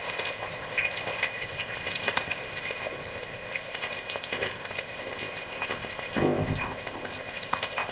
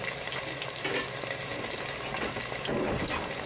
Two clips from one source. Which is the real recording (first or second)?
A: second